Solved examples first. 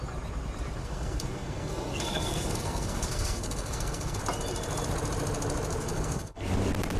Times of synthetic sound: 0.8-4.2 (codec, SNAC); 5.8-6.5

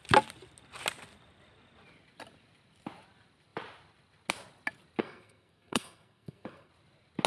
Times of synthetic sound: 5.0-6.7 (codec, SNAC)

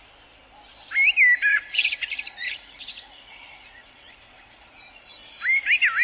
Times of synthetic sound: 1.5-5.1 (vocoder, Vocos)

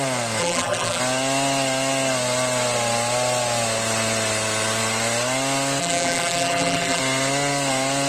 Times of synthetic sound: 0.4-1.0 (vocoder, BigVGAN v2); 5.8-7.0

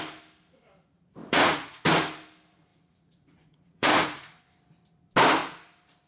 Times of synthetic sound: 1.2-1.9 (vocoder, Vocos); 2.7-4.4